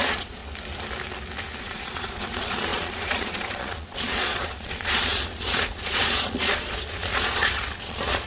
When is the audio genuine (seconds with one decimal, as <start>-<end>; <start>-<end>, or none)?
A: 0.4-1.6